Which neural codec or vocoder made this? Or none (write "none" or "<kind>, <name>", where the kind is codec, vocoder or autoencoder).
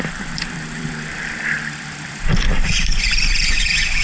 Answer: vocoder, BigVGAN v2